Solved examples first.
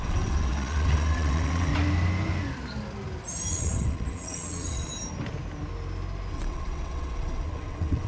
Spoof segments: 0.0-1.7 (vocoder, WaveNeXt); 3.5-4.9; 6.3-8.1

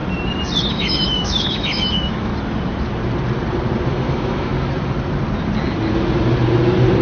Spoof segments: 0.7-2.3 (autoencoder, DAC-VAE); 3.9-4.5